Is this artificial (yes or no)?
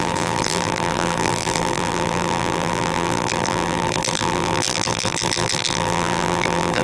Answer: yes